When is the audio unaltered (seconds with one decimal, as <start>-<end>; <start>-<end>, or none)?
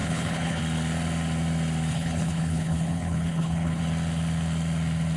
0.6-1.9; 3.8-5.2